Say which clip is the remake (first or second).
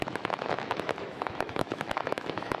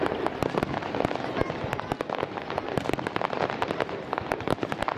first